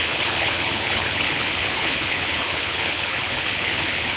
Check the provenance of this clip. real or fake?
fake